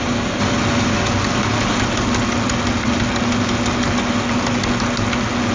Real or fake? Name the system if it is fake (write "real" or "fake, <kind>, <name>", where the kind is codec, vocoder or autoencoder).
real